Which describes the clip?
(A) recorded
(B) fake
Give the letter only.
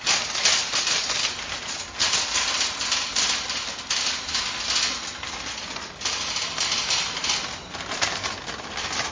A